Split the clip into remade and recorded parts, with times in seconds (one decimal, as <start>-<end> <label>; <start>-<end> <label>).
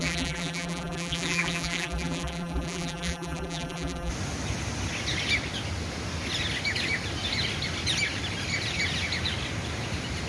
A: 0.0-4.1 remade; 4.1-10.3 recorded